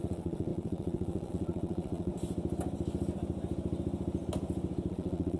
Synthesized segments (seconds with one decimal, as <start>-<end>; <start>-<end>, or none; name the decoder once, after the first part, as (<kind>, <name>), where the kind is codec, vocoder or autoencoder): 0.0-2.1 (vocoder, WaveNeXt); 4.9-5.4

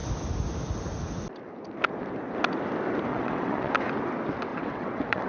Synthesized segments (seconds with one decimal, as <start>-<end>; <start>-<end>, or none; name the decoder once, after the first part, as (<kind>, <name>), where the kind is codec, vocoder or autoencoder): 3.1-3.7 (vocoder, WaveNeXt); 4.5-5.3

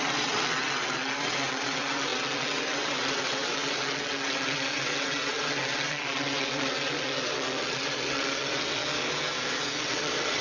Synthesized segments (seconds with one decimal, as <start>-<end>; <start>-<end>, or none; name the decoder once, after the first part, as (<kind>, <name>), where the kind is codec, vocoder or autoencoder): 0.0-8.8 (vocoder, WaveNeXt); 9.8-10.4